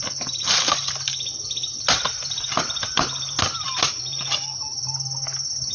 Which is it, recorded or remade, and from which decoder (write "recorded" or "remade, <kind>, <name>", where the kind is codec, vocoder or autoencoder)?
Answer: recorded